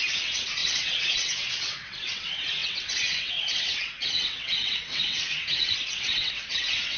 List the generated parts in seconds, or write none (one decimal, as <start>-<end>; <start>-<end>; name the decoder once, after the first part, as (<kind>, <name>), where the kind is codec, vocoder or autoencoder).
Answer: 0.0-7.0 (vocoder, WaveNeXt)